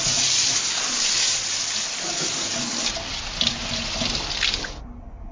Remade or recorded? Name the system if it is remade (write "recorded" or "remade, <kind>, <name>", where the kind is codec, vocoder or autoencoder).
recorded